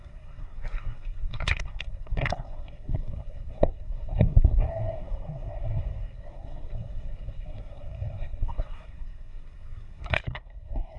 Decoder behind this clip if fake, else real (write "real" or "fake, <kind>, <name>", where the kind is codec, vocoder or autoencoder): fake, codec, SNAC